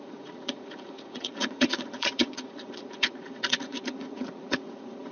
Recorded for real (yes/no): no